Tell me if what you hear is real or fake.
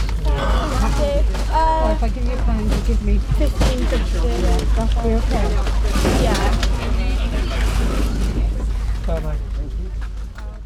real